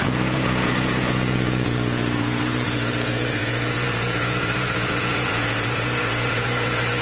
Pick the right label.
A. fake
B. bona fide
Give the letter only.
A